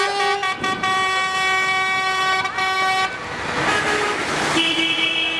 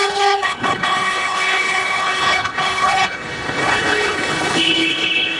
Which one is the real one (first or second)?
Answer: first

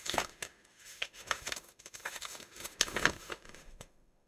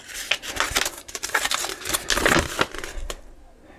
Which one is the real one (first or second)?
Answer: second